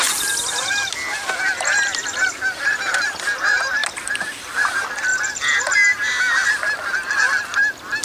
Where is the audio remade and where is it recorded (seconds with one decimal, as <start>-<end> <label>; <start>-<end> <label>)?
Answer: 0.0-8.0 recorded